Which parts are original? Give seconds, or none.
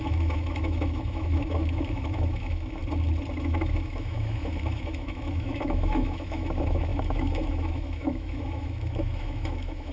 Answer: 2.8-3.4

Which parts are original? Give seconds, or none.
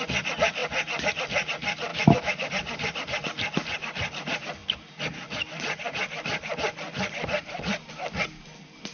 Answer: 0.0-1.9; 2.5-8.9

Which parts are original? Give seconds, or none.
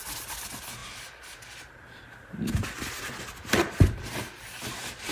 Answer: 0.0-5.1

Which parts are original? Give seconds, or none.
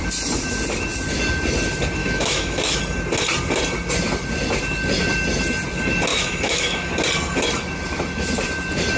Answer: 0.0-2.0; 2.8-6.1; 6.9-9.0